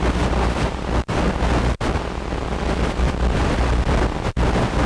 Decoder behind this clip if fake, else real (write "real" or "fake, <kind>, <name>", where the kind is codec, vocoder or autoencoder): real